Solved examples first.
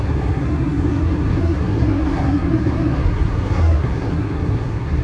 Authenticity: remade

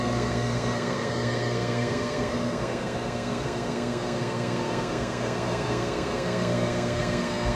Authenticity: remade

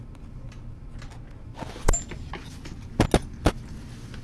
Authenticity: recorded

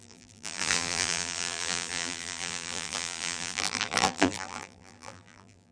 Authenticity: remade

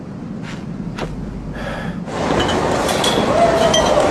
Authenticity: recorded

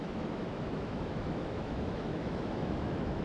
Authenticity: remade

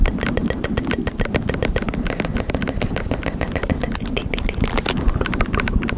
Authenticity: recorded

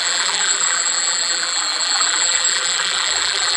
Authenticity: remade